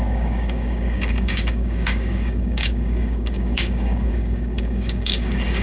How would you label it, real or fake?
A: fake